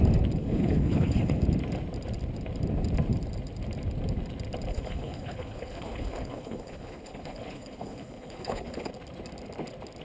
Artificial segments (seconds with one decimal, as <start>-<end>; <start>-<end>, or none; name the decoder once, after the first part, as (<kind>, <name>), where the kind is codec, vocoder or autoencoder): 0.4-1.4 (codec, HILCodec); 4.7-8.9